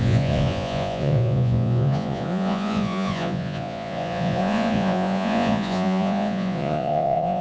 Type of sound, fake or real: fake